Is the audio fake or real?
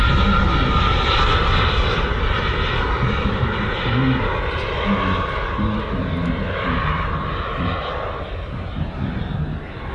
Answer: real